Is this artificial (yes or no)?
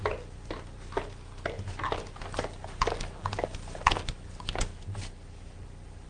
no